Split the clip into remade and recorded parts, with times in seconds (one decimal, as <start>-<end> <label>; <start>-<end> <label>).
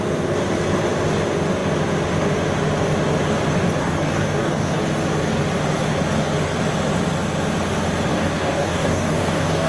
0.0-3.8 recorded; 3.8-4.8 remade; 4.8-8.1 recorded; 8.1-9.7 remade